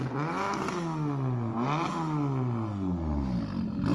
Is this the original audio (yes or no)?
yes